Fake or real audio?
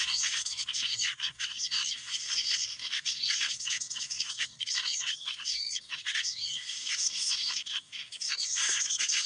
fake